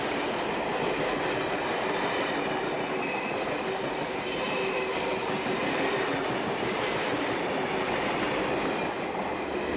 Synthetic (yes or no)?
no